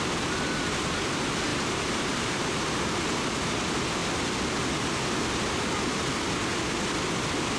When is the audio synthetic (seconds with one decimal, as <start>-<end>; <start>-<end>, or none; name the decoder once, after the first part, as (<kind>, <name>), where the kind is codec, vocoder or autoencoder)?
1.5-3.0 (vocoder, BigVGAN v2)